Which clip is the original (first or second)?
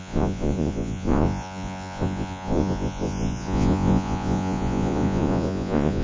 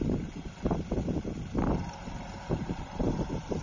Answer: second